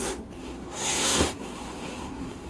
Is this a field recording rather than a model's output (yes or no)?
no